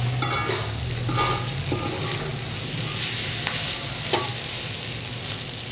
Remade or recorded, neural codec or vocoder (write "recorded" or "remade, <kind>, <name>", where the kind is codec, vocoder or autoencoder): recorded